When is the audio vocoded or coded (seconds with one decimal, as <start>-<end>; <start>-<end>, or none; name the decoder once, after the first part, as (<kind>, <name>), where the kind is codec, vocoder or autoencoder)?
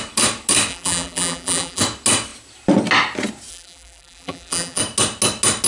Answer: 0.7-1.8 (vocoder, BigVGAN v2); 3.5-4.8